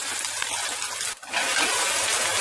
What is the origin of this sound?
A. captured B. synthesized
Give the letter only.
A